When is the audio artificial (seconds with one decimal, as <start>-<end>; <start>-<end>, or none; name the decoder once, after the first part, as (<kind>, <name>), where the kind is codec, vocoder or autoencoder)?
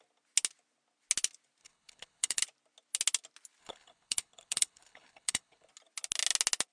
1.6-2.4 (codec, HILCodec); 3.6-5.7